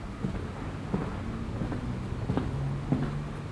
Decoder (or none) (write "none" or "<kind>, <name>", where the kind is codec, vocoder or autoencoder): none